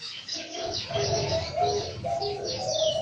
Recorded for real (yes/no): no